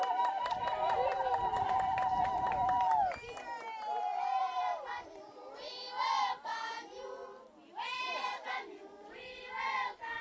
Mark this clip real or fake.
real